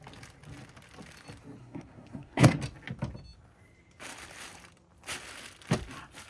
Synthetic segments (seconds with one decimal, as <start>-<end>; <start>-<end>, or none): 1.6-2.6